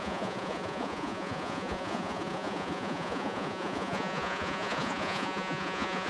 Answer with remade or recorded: remade